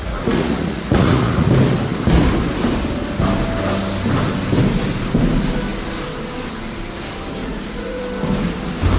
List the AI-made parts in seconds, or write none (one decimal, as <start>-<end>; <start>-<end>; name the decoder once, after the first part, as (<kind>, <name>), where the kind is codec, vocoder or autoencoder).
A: 0.0-1.5 (vocoder, Vocos); 7.4-8.0